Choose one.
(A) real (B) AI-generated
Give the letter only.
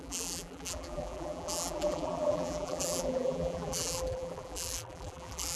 B